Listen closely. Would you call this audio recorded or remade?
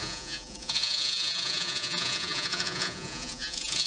remade